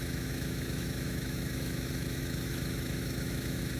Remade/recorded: remade